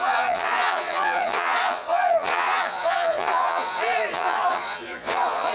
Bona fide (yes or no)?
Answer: no